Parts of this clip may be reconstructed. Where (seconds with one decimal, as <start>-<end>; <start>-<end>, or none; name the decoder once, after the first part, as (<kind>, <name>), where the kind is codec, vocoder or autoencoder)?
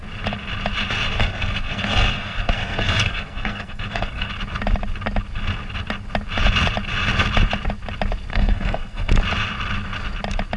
1.2-4.3 (codec, SNAC); 8.3-9.1